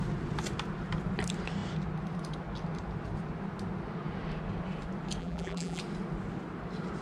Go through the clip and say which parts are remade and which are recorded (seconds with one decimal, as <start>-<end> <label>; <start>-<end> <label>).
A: 0.0-5.2 recorded; 5.2-5.8 remade; 5.8-7.0 recorded